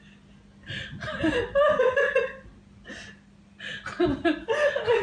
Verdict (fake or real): real